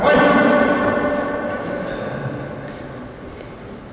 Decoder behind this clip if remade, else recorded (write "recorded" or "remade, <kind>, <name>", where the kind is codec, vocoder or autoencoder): recorded